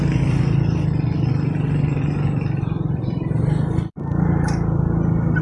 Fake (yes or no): no